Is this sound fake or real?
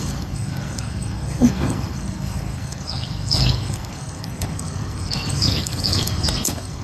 fake